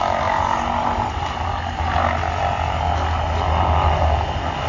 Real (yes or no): yes